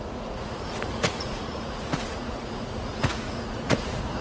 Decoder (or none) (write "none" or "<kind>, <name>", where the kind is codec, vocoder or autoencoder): vocoder, Vocos